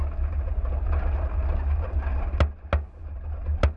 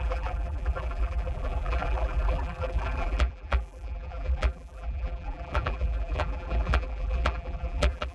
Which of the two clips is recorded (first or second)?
first